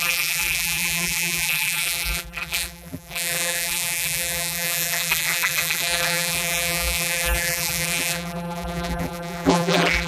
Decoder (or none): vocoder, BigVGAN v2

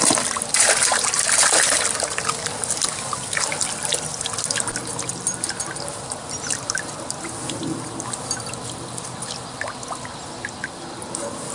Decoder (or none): none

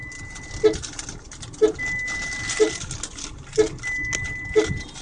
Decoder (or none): none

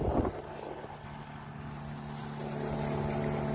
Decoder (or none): none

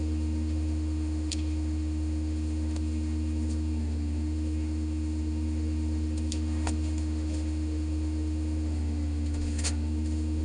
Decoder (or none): autoencoder, DAC-VAE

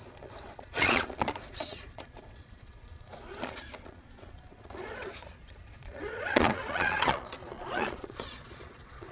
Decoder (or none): vocoder, Vocos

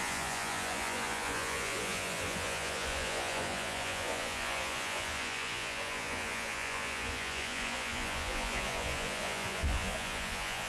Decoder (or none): vocoder, Vocos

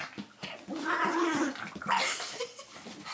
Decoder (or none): none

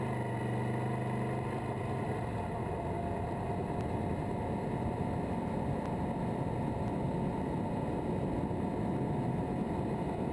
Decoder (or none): none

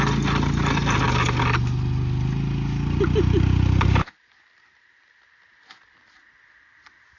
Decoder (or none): none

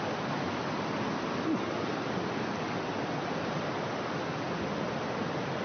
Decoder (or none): none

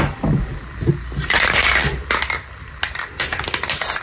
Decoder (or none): none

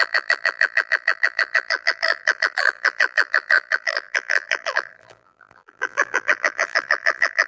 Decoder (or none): vocoder, BigVGAN v2